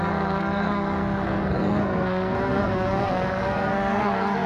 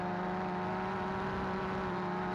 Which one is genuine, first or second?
second